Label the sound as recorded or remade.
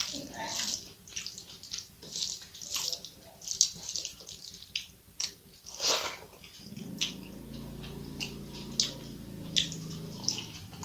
recorded